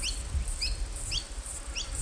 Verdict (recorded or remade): recorded